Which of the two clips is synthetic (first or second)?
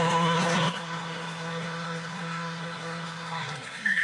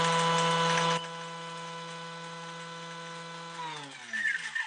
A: first